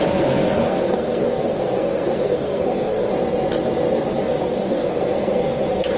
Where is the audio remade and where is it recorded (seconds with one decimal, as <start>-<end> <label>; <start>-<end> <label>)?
0.0-3.1 remade; 3.1-4.2 recorded; 4.2-6.0 remade